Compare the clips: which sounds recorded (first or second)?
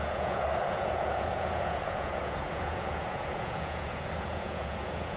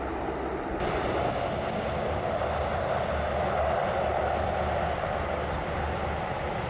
second